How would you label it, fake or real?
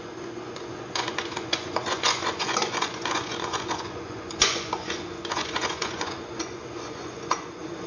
fake